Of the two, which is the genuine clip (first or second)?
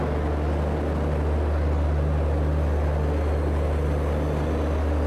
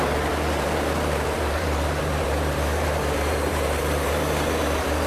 first